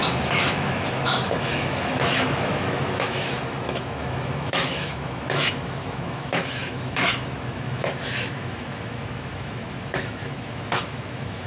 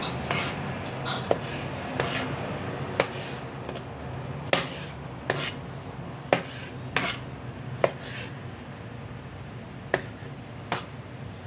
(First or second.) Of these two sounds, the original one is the second